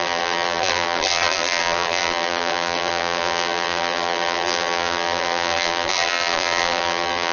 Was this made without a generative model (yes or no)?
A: no